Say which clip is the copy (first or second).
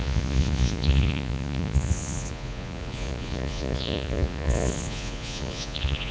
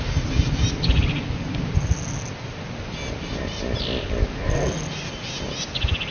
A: first